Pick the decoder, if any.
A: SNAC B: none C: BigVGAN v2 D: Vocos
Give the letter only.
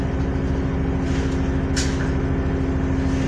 B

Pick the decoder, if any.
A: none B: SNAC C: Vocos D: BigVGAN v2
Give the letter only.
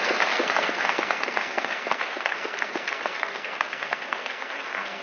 B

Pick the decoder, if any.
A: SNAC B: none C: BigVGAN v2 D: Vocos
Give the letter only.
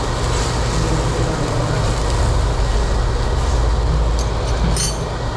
B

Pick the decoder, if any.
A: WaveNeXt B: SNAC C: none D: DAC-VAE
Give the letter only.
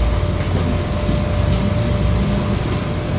C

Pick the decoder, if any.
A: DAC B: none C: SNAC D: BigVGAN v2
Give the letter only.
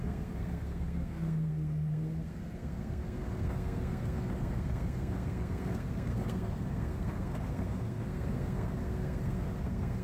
C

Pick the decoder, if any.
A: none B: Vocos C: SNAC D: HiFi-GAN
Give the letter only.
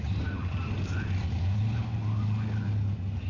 A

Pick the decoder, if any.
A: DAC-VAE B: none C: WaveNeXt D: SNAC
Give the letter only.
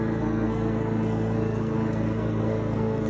D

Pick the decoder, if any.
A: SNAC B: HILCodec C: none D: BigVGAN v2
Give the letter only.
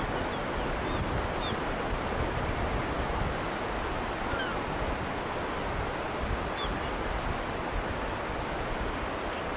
C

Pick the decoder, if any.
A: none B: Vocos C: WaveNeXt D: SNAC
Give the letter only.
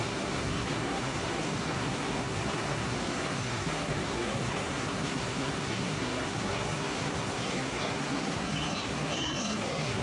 D